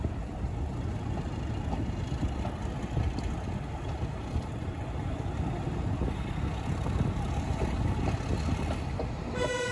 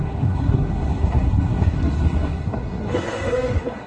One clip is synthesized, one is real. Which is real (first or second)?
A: first